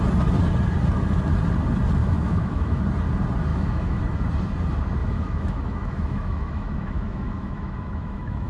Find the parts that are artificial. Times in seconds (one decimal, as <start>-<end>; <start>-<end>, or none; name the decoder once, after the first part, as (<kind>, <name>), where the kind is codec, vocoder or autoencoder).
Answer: 2.0-2.8 (autoencoder, DAC-VAE); 3.5-4.0; 5.0-8.5

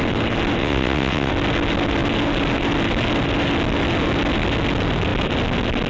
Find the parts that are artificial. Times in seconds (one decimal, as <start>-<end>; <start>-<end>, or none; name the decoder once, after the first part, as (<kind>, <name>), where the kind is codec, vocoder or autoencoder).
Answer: 0.6-1.3 (vocoder, WaveNeXt)

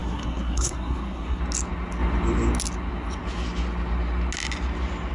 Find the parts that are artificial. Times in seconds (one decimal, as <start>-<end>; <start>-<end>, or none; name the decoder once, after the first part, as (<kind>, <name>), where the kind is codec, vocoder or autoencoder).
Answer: 0.0-1.4 (codec, SNAC)

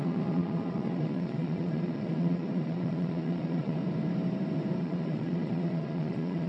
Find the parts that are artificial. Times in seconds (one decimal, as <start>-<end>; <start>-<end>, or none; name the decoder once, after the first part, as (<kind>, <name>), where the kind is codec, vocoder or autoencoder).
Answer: 0.0-3.8 (vocoder, Vocos); 4.8-6.5

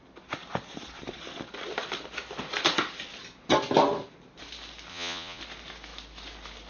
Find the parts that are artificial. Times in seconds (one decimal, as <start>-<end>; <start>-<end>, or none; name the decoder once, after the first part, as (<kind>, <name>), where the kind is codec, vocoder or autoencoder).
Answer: 4.9-5.4 (vocoder, Vocos)

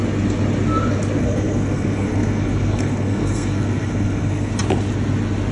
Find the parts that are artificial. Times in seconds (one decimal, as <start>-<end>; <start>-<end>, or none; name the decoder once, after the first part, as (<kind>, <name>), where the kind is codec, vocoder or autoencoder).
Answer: 1.2-4.5 (codec, SNAC)